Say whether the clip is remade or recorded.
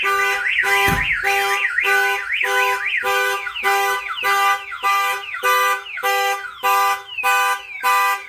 remade